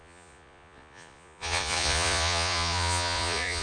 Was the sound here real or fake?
fake